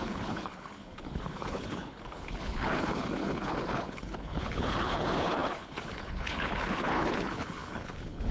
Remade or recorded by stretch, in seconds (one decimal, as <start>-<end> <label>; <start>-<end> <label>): 0.0-8.3 remade